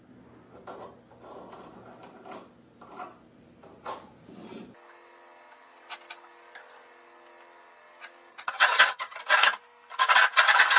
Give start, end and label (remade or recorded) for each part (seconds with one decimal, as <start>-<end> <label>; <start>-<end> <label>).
0.0-8.3 recorded; 8.3-9.2 remade; 9.2-10.8 recorded